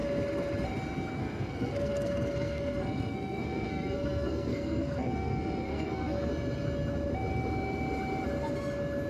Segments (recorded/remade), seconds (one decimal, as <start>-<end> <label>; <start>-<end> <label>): 0.0-1.2 recorded; 1.2-6.3 remade; 6.3-9.1 recorded